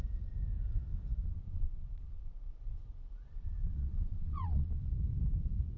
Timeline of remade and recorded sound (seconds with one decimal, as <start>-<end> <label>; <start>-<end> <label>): 0.0-1.3 recorded; 1.3-4.8 remade; 4.8-5.8 recorded